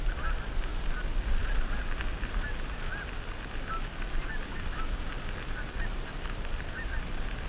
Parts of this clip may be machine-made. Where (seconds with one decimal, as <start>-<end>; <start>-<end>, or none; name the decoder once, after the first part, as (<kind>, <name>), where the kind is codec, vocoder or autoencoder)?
none

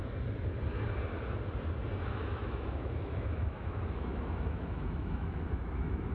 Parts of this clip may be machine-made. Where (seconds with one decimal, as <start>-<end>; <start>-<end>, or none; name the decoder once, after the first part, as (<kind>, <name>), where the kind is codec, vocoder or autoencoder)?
2.2-6.1 (autoencoder, DAC-VAE)

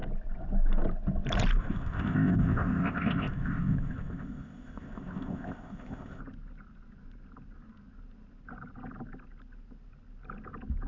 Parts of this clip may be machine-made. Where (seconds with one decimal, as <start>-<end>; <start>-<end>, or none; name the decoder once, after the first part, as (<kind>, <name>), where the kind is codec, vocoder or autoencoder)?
1.6-6.2 (codec, ZipCodec)

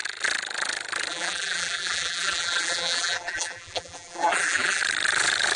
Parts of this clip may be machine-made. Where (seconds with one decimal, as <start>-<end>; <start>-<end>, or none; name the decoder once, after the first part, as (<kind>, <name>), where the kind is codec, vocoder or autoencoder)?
1.1-4.8 (vocoder, BigVGAN v2)

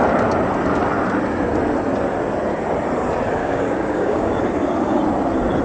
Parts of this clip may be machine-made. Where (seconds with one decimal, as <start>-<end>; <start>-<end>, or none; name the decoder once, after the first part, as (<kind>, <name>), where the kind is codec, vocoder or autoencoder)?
3.4-4.4 (codec, DAC)